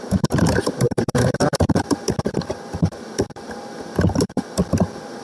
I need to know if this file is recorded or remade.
remade